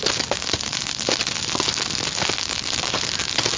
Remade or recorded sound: recorded